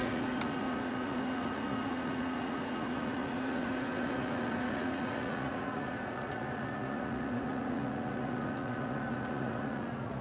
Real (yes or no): no